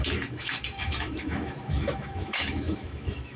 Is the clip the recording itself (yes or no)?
no